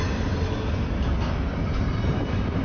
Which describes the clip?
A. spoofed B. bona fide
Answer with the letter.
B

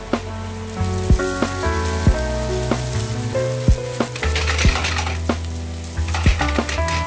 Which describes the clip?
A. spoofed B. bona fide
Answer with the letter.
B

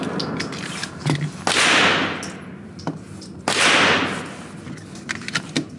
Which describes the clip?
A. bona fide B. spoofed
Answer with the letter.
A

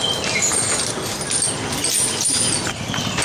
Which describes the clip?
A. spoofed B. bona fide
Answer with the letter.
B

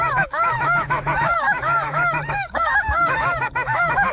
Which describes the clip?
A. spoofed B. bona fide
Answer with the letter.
A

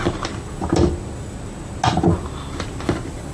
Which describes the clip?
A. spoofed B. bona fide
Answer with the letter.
B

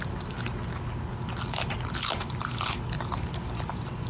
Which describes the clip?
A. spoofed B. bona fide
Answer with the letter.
B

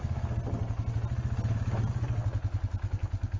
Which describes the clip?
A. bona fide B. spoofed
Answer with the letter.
A